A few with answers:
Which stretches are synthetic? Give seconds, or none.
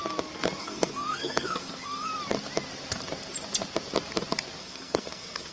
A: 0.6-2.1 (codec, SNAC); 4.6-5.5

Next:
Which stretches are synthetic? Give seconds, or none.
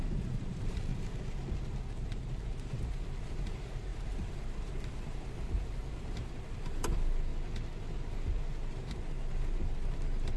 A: 0.0-0.9 (vocoder, BigVGAN v2); 1.8-7.3; 8.7-10.4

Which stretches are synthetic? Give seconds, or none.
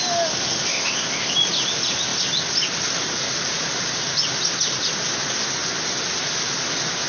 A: 0.7-1.3 (codec, ZipCodec)